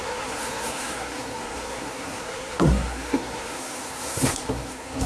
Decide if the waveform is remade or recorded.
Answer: remade